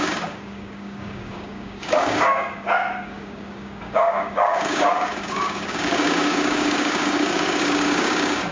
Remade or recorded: remade